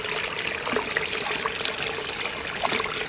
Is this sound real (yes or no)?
yes